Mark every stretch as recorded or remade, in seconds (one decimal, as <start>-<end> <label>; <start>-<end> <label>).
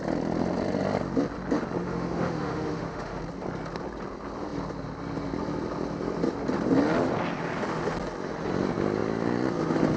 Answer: 0.0-1.8 recorded; 1.8-3.2 remade; 3.2-10.0 recorded